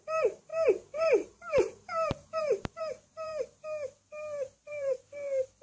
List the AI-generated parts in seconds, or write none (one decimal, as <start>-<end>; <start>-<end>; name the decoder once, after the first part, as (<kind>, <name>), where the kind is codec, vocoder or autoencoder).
0.0-3.3 (vocoder, BigVGAN v2); 4.7-5.6